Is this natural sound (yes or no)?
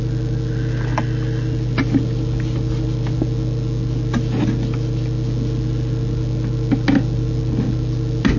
yes